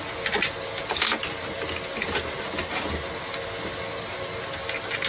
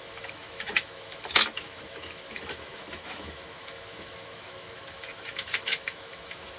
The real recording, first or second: first